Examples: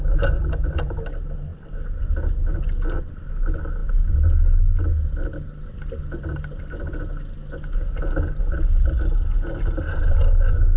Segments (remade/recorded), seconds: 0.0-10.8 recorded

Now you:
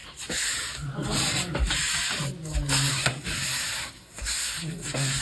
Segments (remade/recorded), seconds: 0.0-2.9 recorded; 2.9-5.2 remade

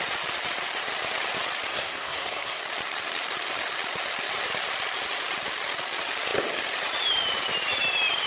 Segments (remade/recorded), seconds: 0.0-1.7 recorded; 1.7-2.6 remade; 2.6-8.3 recorded

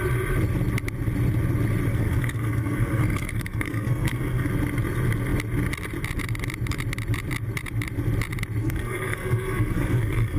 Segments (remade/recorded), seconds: 0.0-1.9 recorded; 1.9-4.5 remade; 4.5-8.6 recorded; 8.6-10.4 remade